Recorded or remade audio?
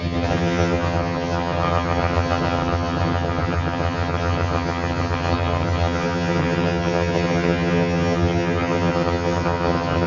remade